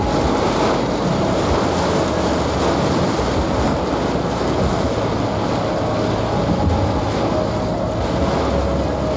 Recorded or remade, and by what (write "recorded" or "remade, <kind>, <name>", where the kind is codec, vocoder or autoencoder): recorded